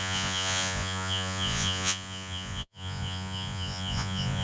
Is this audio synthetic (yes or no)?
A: yes